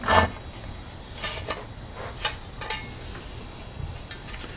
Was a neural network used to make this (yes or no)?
no